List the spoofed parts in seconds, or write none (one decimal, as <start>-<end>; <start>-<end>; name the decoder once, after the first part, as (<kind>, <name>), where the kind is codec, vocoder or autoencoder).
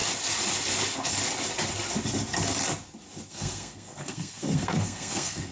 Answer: 3.3-5.5 (codec, SNAC)